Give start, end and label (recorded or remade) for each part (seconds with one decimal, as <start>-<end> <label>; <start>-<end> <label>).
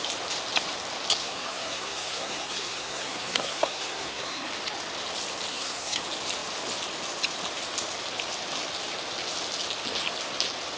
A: 0.0-1.2 recorded; 1.2-4.5 remade; 4.5-5.5 recorded; 5.5-6.0 remade; 6.0-10.8 recorded